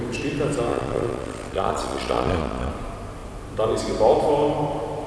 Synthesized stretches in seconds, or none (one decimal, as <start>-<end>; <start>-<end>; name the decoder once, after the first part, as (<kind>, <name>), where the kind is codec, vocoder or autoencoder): 0.7-2.7 (vocoder, Vocos)